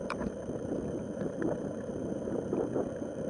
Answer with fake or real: fake